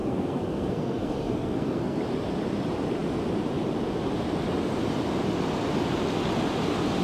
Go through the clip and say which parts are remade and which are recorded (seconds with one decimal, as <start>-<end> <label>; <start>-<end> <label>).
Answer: 0.0-2.0 remade; 2.0-7.0 recorded